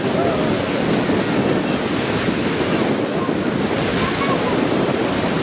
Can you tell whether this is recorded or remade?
recorded